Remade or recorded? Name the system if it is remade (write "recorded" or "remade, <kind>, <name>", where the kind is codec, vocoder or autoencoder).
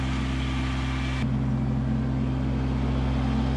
recorded